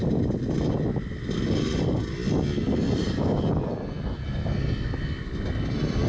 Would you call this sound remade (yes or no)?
no